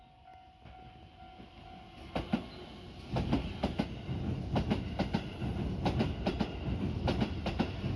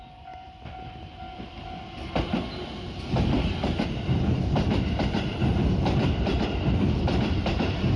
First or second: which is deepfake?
second